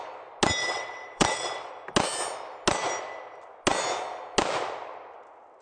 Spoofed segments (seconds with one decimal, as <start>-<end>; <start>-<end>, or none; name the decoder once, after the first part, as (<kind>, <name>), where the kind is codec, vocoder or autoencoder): 0.6-1.7 (vocoder, WaveNeXt)